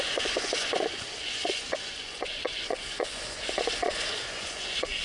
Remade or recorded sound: remade